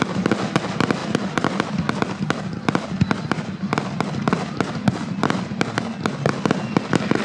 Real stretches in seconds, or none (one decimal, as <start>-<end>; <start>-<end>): 0.0-7.2